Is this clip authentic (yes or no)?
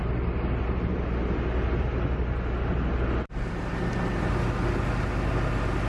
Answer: yes